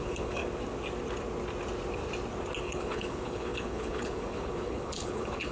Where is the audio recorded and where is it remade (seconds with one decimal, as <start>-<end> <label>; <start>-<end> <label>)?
0.0-0.4 remade; 0.4-2.6 recorded; 2.6-5.5 remade